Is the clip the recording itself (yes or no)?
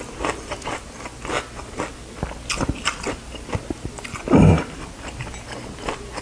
yes